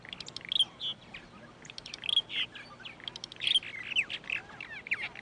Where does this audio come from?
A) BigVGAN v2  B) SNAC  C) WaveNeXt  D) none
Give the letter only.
D